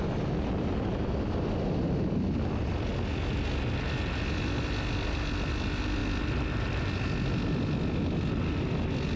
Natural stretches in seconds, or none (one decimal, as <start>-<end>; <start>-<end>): 0.0-9.2